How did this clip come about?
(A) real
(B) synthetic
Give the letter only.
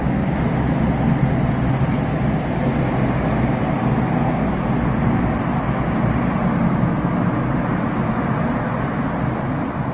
A